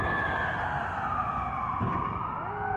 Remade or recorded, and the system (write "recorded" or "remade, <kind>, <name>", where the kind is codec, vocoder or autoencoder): recorded